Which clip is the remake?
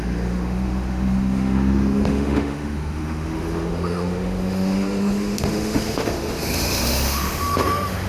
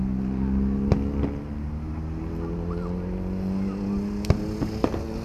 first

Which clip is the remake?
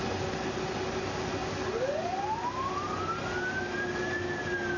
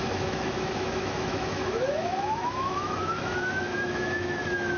second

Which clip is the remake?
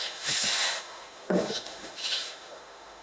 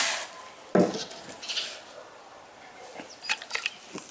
first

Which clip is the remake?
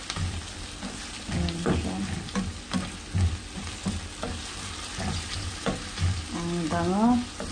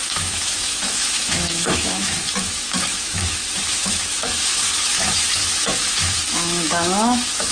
second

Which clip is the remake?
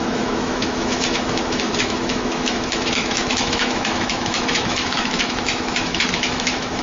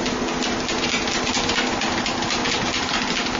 first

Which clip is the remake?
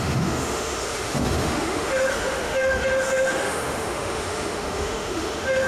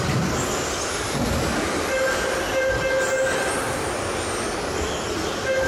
first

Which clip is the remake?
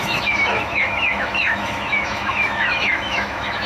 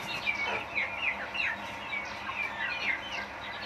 first